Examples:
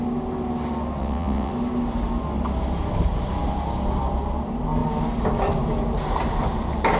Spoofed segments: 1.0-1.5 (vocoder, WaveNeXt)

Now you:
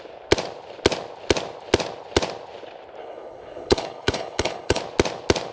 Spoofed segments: 3.0-4.8 (codec, HILCodec)